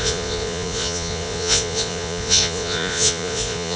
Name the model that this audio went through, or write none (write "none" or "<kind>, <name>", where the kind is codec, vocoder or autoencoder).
vocoder, Vocos